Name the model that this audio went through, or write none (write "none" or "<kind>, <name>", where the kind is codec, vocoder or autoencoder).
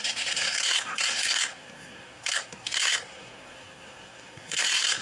codec, SNAC